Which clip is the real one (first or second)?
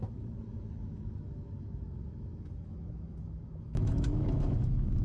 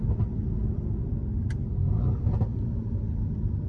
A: second